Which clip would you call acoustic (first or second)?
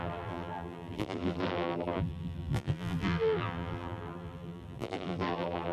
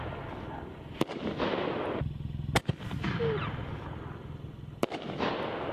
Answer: second